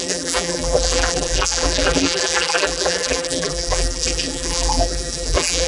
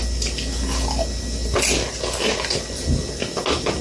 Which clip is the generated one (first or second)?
first